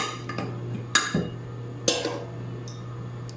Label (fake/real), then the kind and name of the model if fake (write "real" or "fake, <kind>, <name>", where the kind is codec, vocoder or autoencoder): real